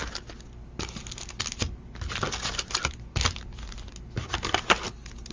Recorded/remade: recorded